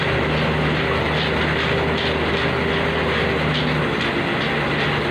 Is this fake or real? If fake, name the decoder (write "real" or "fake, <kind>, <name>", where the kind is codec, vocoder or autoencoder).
real